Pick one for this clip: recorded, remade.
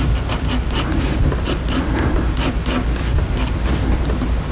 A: recorded